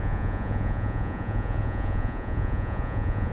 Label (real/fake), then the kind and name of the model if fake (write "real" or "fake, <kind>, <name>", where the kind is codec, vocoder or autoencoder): fake, vocoder, Vocos